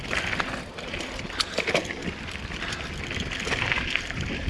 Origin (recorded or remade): recorded